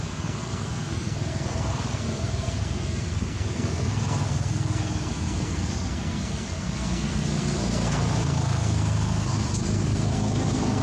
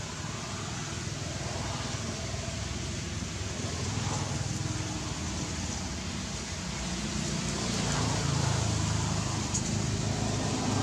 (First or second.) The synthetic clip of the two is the first